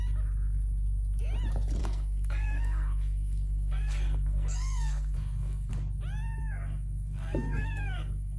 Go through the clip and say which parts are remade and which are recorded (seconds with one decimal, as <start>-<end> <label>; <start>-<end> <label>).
0.0-1.8 recorded; 1.8-5.7 remade; 5.7-6.4 recorded; 6.4-8.4 remade